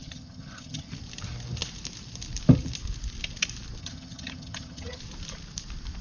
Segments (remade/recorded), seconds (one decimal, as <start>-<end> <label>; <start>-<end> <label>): 0.0-0.9 remade; 0.9-3.8 recorded; 3.8-5.0 remade; 5.0-6.0 recorded